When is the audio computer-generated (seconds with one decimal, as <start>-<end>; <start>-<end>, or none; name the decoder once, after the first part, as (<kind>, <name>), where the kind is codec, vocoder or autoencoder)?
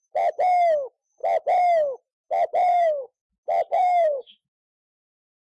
2.7-3.3 (codec, SNAC); 3.7-4.6